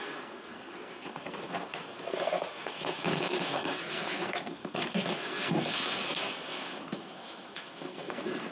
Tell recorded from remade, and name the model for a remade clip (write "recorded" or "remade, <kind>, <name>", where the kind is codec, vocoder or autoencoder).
remade, codec, SNAC